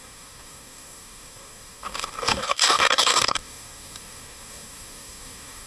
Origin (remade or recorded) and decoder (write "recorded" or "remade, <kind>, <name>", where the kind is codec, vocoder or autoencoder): remade, codec, DAC